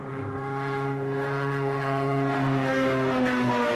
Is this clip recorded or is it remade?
remade